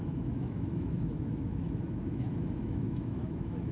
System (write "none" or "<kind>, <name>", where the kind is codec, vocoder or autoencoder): autoencoder, DAC-VAE